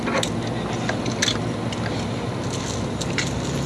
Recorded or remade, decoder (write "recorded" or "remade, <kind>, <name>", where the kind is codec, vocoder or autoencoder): recorded